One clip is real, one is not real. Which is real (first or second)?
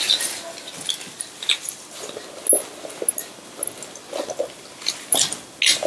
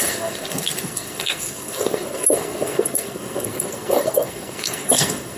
first